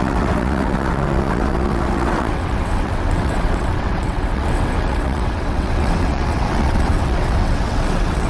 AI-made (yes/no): yes